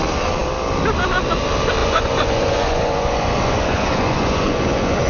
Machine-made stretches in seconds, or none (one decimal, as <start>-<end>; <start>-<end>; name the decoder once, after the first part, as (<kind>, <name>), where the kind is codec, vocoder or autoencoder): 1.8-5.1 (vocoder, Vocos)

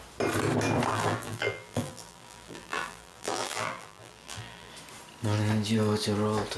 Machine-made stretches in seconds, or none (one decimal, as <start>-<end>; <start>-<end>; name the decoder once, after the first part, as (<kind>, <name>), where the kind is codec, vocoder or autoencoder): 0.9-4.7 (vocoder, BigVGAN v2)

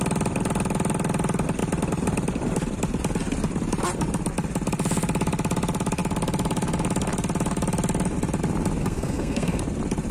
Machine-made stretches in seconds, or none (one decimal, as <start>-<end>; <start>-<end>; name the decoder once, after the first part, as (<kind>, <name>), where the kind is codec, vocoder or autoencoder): 8.8-9.6 (codec, SNAC)

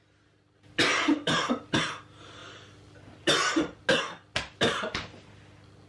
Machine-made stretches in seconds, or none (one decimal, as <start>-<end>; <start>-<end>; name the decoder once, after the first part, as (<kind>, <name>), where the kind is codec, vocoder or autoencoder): 0.9-1.5 (vocoder, BigVGAN v2)

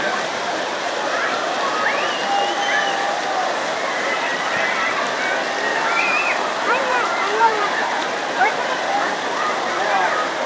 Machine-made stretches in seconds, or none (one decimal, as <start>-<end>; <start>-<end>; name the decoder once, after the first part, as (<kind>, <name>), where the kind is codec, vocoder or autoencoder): 0.0-2.2 (vocoder, BigVGAN v2); 3.2-4.3; 6.0-10.5

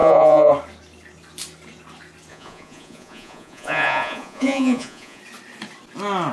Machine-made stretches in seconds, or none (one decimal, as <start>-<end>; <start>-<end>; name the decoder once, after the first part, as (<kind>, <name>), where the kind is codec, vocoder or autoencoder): 0.0-0.5 (vocoder, Vocos); 2.3-5.2

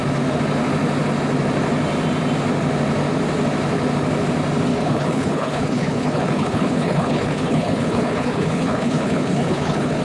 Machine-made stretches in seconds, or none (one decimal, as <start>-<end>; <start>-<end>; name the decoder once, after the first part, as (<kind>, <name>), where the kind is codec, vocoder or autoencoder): 4.7-10.0 (codec, HILCodec)